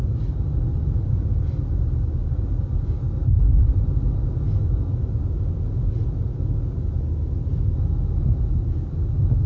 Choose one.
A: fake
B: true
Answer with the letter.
B